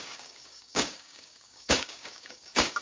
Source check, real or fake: fake